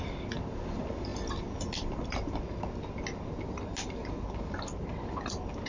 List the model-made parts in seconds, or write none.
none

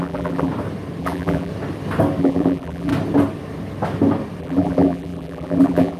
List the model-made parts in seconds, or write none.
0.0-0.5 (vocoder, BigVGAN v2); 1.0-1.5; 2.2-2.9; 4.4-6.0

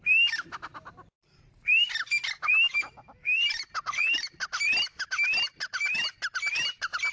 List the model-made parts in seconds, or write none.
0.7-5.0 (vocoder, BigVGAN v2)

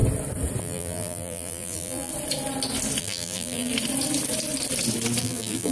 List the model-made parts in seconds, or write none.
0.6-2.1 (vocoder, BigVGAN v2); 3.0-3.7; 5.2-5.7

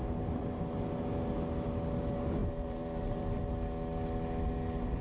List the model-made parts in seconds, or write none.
2.4-3.4 (vocoder, BigVGAN v2)